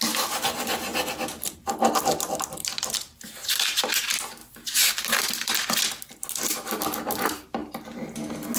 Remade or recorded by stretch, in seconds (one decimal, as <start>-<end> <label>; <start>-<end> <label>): 0.0-4.4 recorded; 4.4-5.8 remade; 5.8-8.6 recorded